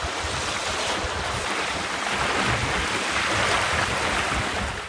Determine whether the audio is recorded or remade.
recorded